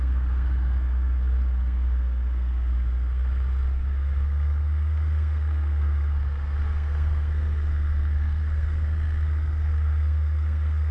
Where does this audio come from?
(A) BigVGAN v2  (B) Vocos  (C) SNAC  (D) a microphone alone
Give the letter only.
C